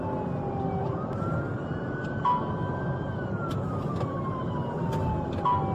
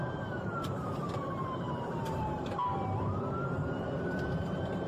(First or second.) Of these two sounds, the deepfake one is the second